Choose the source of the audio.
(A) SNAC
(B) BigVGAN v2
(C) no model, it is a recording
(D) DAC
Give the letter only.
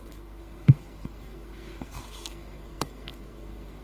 A